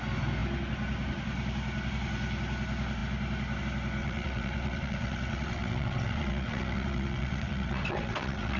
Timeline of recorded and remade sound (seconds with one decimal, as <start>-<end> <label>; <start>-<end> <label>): 0.0-4.0 recorded; 4.0-8.6 remade